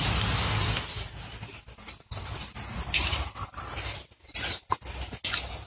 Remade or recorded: recorded